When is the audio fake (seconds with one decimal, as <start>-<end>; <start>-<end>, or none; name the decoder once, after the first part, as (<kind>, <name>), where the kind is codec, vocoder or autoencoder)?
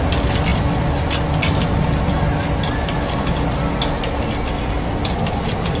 none